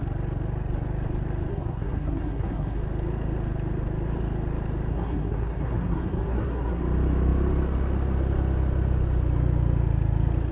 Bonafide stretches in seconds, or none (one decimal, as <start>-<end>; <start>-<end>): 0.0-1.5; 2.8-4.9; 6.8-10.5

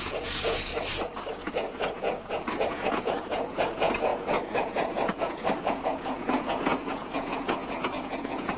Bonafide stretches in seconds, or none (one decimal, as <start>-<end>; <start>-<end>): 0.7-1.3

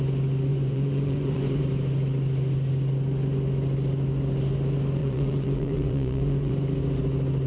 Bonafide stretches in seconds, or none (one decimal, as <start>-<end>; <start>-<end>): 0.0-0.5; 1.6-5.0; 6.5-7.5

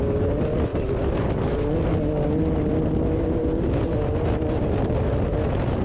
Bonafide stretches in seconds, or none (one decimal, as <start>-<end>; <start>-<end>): 0.0-5.8

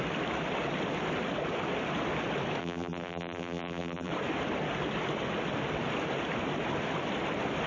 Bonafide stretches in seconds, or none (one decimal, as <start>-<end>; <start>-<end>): 0.0-2.6; 4.1-7.7

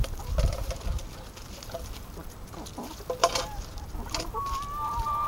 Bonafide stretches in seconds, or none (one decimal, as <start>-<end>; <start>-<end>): 0.0-3.2; 4.3-5.3

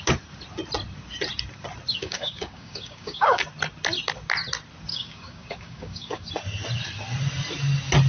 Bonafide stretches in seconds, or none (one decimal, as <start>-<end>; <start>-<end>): 0.0-1.9; 3.4-4.9; 6.3-8.1